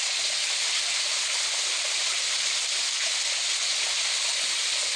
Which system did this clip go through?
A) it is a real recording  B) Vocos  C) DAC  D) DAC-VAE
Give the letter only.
A